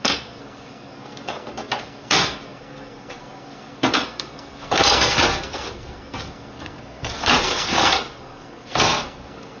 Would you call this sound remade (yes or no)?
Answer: yes